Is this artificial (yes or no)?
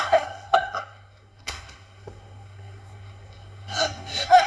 yes